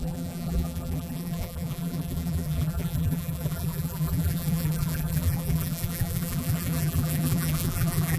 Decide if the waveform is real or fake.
fake